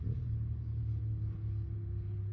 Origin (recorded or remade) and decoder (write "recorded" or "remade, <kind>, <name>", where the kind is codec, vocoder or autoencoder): recorded